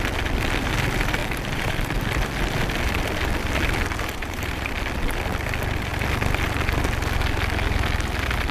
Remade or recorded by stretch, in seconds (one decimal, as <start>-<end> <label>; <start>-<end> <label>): 0.0-1.2 recorded; 1.2-2.0 remade; 2.0-4.2 recorded; 4.2-4.7 remade; 4.7-8.5 recorded

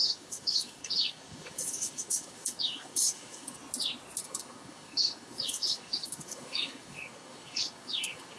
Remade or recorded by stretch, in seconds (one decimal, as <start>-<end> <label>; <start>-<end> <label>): 0.0-3.6 remade; 3.6-4.2 recorded; 4.2-8.4 remade

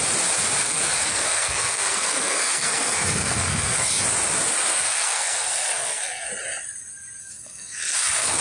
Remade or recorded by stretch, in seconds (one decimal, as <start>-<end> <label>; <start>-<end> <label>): 0.0-0.6 recorded; 0.6-3.9 remade; 3.9-4.7 recorded; 4.7-6.3 remade; 6.3-7.2 recorded; 7.2-8.4 remade

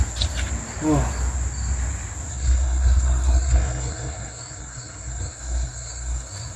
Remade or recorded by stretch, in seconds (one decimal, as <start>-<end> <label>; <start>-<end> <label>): 0.0-2.3 recorded; 2.3-6.6 remade